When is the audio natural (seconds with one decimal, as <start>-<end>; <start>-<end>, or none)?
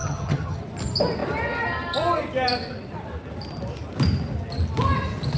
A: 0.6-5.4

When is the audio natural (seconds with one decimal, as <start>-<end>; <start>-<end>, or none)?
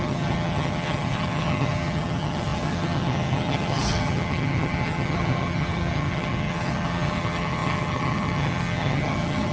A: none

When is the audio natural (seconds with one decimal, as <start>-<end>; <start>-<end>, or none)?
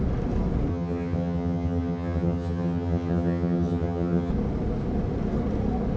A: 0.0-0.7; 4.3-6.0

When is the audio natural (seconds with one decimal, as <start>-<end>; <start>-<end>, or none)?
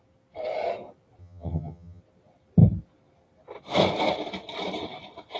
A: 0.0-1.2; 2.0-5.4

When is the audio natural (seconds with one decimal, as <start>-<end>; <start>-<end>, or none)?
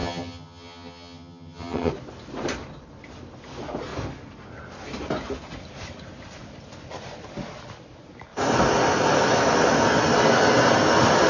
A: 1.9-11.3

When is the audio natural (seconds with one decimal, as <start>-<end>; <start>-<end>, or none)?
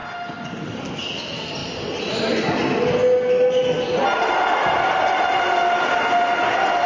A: 0.0-6.9